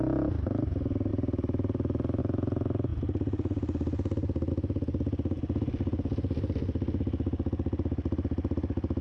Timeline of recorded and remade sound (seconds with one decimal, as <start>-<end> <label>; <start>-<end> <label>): 0.0-1.1 recorded; 1.1-2.2 remade; 2.2-9.0 recorded